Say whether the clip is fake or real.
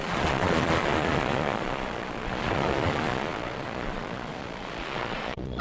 fake